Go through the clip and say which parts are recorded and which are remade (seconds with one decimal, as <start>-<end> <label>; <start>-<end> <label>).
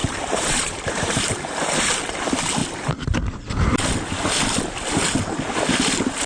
0.0-1.5 remade; 1.5-6.3 recorded